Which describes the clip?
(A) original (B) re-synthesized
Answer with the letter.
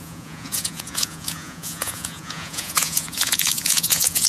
B